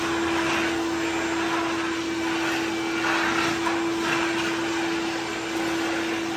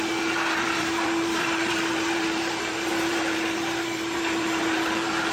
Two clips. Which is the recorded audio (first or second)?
first